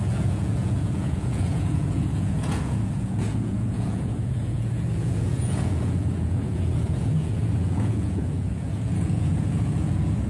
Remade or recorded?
remade